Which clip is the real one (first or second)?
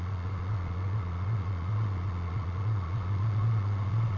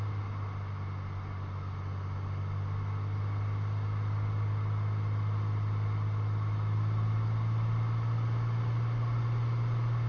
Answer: second